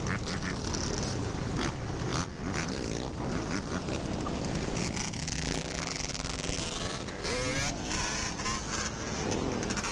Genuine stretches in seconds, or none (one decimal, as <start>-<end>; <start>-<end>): 0.0-5.2; 6.6-9.9